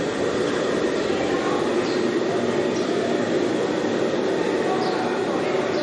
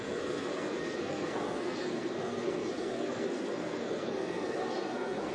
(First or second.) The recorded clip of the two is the first